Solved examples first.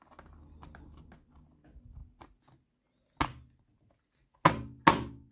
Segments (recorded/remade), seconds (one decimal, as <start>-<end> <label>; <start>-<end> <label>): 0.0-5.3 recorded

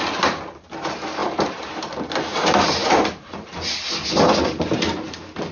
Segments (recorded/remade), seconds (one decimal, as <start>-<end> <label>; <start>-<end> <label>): 0.0-1.2 recorded; 1.2-1.8 remade; 1.8-2.8 recorded; 2.8-3.9 remade; 3.9-5.5 recorded

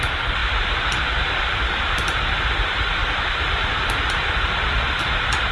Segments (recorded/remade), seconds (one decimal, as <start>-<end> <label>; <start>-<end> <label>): 0.0-0.4 recorded; 0.4-1.0 remade; 1.0-3.0 recorded; 3.0-5.0 remade; 5.0-5.5 recorded

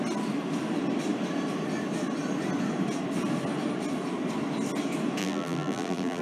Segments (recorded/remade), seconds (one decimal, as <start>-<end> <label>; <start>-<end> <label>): 0.0-5.2 recorded; 5.2-6.2 remade

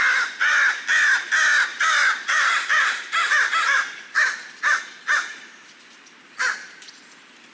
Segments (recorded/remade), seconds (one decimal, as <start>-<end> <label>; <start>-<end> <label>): 0.0-1.1 remade; 1.1-1.7 recorded; 1.7-4.8 remade; 4.8-5.3 recorded; 5.3-7.5 remade

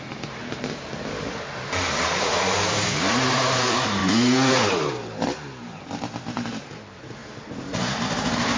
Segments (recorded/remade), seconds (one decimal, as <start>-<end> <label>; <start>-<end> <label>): 0.0-0.4 remade; 0.4-2.0 recorded; 2.0-4.0 remade; 4.0-4.5 recorded; 4.5-8.6 remade

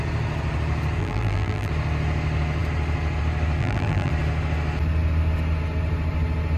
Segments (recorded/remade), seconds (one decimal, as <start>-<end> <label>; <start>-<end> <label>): 0.0-1.0 recorded; 1.0-1.7 remade; 1.7-3.6 recorded; 3.6-4.1 remade; 4.1-6.6 recorded